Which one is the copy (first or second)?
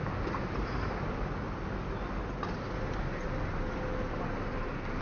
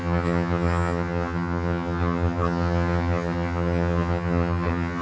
second